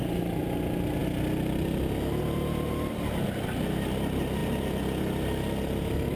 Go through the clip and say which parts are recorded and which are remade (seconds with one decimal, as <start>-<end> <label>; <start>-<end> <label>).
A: 0.0-6.2 recorded